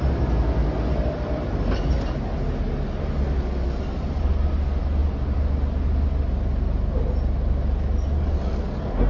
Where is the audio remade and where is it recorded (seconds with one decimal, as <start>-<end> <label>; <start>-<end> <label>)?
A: 0.0-9.1 recorded